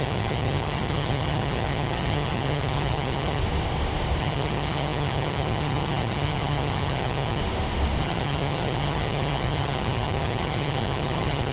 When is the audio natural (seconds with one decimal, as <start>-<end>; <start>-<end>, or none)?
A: 3.4-4.2; 7.4-8.0